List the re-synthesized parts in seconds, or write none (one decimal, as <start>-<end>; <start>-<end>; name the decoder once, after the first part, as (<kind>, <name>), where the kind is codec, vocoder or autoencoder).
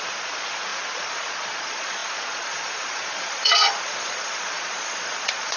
0.0-5.6 (vocoder, Vocos)